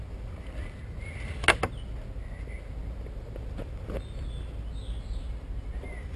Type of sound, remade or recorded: recorded